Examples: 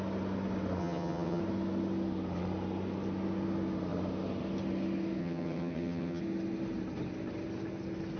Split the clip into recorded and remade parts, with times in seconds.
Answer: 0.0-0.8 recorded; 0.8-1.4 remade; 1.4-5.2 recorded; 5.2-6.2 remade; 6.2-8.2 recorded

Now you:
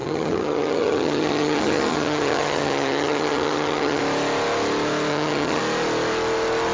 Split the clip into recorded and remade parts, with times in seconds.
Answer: 0.0-4.0 remade; 4.0-5.1 recorded; 5.1-5.6 remade; 5.6-6.7 recorded

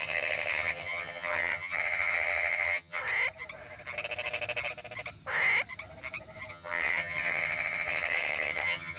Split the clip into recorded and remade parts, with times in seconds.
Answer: 0.0-3.0 remade; 3.0-6.5 recorded; 6.5-9.0 remade

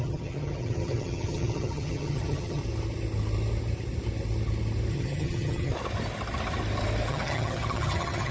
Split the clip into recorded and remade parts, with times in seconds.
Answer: 0.0-2.6 remade; 2.6-4.9 recorded; 4.9-5.7 remade; 5.7-7.1 recorded; 7.1-8.3 remade